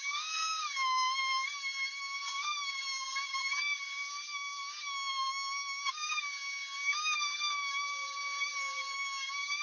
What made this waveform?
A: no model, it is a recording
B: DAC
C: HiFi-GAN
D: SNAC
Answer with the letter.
B